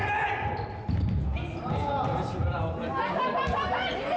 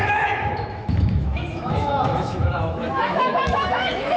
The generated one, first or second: second